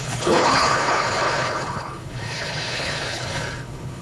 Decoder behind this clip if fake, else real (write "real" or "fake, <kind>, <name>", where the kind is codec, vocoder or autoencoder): fake, codec, HILCodec